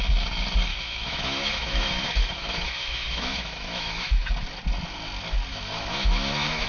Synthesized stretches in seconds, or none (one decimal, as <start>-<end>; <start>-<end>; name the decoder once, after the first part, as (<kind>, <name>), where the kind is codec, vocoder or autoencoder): 0.7-4.3 (autoencoder, DAC-VAE); 5.5-6.7